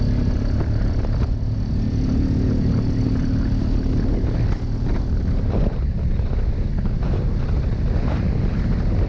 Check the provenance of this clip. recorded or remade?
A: recorded